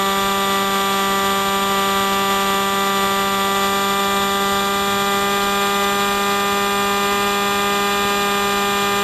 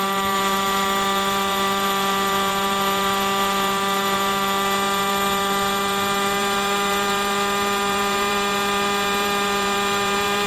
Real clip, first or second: first